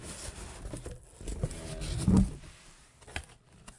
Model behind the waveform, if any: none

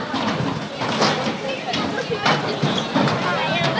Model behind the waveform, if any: none